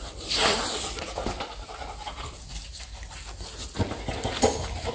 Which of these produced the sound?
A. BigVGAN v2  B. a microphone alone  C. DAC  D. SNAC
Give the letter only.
B